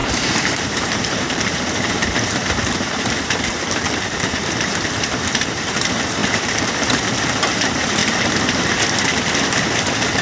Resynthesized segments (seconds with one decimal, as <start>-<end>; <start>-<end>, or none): 0.0-8.0